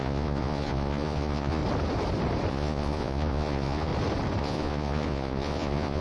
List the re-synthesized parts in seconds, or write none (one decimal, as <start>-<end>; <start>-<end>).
0.0-1.6; 2.5-3.9; 4.4-6.0

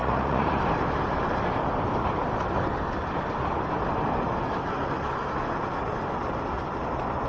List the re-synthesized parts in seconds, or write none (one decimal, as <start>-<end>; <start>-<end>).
0.0-0.6

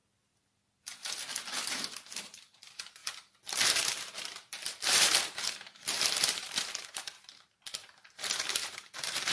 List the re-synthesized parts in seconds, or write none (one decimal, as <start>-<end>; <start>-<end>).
1.7-3.0; 3.8-9.3